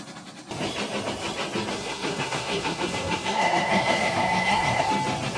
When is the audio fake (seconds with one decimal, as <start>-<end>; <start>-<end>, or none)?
1.7-4.9